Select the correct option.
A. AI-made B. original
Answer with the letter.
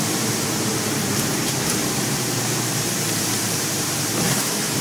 A